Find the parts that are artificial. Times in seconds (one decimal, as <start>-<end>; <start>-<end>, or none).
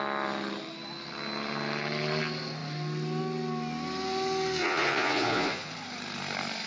4.6-5.7